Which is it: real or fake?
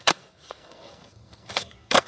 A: fake